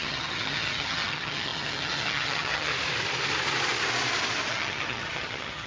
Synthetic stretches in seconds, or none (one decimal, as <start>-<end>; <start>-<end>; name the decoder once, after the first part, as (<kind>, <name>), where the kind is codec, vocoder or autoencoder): 0.0-2.7 (vocoder, HiFi-GAN); 4.5-5.7